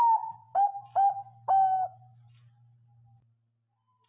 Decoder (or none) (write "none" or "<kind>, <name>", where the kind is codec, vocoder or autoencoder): none